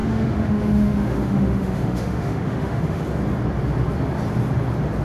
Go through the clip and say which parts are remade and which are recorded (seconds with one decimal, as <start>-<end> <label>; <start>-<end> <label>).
0.0-3.0 remade; 3.0-5.0 recorded